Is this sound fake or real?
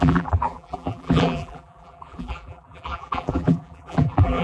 fake